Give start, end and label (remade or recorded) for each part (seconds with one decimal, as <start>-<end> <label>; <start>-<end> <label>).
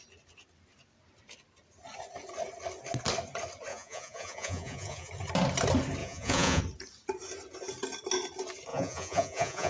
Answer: 0.0-3.7 recorded; 3.7-5.1 remade; 5.1-6.0 recorded; 6.0-6.6 remade; 6.6-8.7 recorded; 8.7-9.7 remade